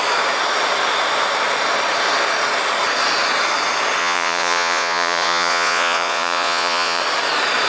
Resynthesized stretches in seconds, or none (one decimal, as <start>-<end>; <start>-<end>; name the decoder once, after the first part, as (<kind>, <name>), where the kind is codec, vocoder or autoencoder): 4.0-7.0 (vocoder, Vocos)